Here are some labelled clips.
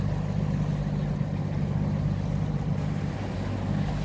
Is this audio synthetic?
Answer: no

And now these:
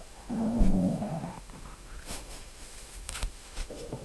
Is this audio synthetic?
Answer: yes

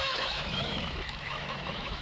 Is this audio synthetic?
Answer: yes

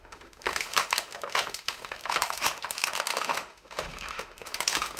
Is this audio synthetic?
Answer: yes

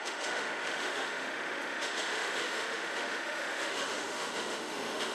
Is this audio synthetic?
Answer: yes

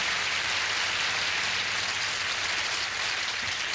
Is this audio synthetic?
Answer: no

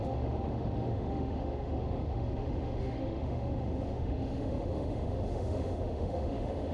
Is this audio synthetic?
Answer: yes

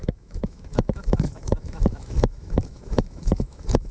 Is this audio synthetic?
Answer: yes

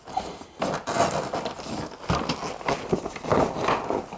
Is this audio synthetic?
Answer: no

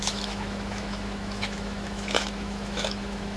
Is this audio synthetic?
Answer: yes